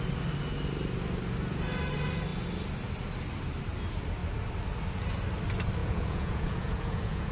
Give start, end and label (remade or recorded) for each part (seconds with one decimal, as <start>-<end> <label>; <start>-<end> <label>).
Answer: 0.0-5.8 recorded; 5.8-7.3 remade

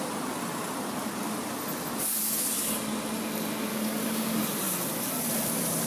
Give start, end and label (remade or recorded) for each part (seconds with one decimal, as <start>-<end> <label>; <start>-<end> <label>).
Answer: 0.0-3.7 recorded; 3.7-4.4 remade; 4.4-5.9 recorded

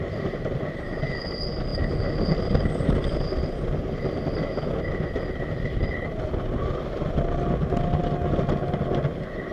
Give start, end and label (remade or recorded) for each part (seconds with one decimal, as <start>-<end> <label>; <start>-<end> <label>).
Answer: 0.0-9.5 recorded